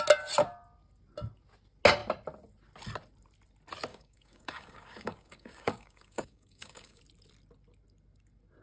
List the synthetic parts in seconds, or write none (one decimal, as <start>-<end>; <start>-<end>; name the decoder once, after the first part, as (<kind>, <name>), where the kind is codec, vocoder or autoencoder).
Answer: 3.9-7.0 (codec, DAC)